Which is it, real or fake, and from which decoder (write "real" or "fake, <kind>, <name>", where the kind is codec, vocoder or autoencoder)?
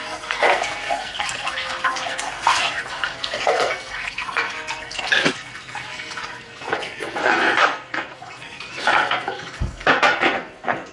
fake, codec, SNAC